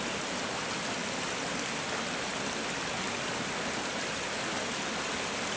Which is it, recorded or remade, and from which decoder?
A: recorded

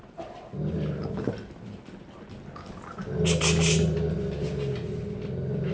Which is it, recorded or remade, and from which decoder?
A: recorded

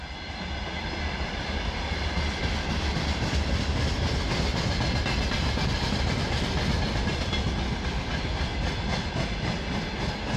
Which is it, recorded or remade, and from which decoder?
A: recorded